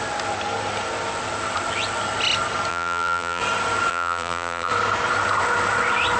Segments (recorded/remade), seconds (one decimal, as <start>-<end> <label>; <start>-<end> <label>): 0.0-2.7 recorded; 2.7-3.4 remade; 3.4-3.9 recorded; 3.9-4.7 remade; 4.7-6.2 recorded